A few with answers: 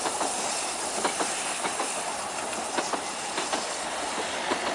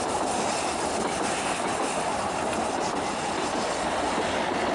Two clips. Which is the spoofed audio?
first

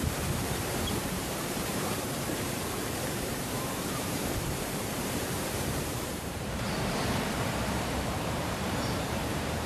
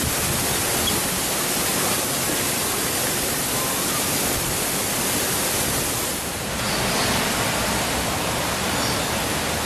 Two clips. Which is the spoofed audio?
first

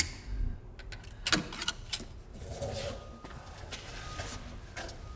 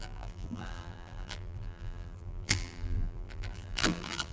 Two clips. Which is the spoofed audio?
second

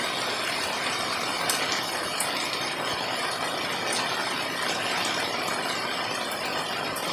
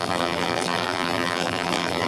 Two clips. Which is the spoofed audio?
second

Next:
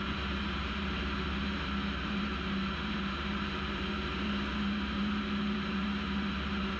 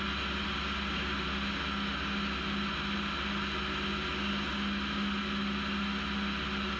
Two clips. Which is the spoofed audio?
first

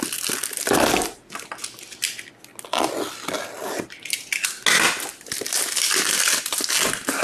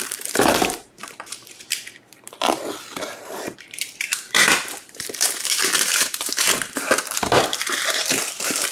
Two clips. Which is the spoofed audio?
second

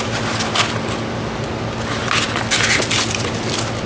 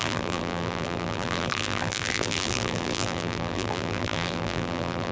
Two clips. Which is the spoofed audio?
second